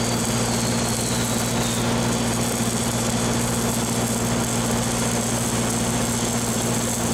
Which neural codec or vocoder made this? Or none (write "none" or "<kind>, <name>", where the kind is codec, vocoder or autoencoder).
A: none